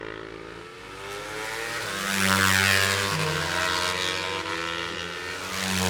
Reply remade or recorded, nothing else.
recorded